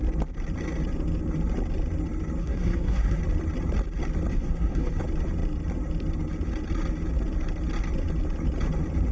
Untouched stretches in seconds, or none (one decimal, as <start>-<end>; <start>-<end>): 0.0-2.4; 3.2-4.3; 4.9-9.1